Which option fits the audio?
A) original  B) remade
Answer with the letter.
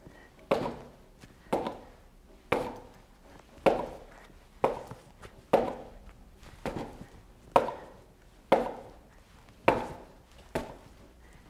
A